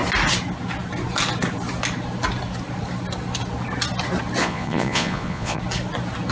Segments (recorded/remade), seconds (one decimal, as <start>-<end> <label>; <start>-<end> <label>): 0.0-4.4 recorded; 4.4-5.6 remade; 5.6-6.3 recorded